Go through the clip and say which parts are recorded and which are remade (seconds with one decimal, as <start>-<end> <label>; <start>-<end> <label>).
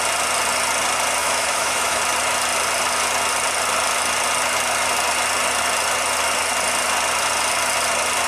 0.0-1.2 recorded; 1.2-2.0 remade; 2.0-8.3 recorded